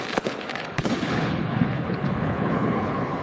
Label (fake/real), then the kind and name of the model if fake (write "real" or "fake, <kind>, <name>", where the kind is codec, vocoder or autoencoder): fake, codec, HILCodec